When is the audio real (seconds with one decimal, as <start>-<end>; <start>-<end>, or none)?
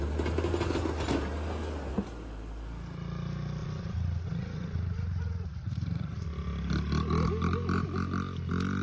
0.0-3.6; 6.3-8.8